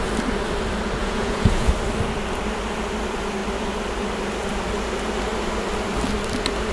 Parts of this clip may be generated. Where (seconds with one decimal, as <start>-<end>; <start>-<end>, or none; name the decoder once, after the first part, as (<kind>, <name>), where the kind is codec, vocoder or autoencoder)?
1.0-1.7 (vocoder, Vocos)